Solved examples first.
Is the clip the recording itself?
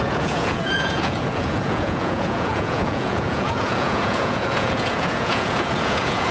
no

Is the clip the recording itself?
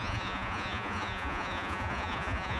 no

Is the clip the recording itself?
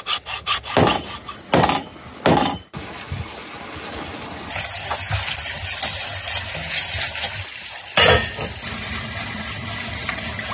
yes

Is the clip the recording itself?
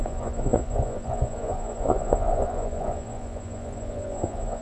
no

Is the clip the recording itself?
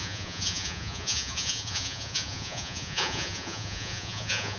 no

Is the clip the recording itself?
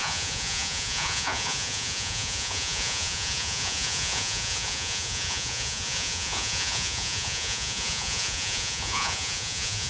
no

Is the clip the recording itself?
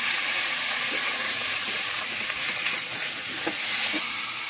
no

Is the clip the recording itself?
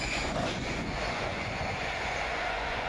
no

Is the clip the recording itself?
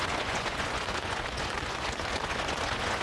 no